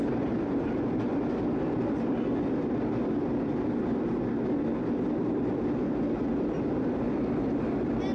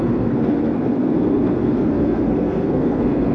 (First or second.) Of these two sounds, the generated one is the second